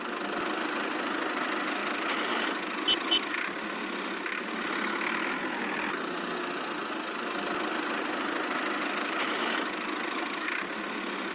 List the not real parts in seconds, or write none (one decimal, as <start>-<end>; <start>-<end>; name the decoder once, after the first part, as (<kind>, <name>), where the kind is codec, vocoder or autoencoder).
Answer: none